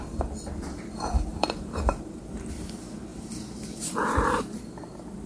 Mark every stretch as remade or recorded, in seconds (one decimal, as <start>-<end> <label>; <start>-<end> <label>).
0.0-1.3 recorded; 1.3-2.2 remade; 2.2-3.1 recorded; 3.1-4.6 remade; 4.6-5.3 recorded